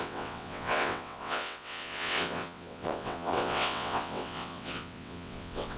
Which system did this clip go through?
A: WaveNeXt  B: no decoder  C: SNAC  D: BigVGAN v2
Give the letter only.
A